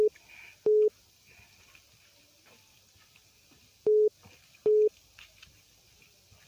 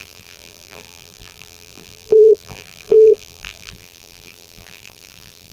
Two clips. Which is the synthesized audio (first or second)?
second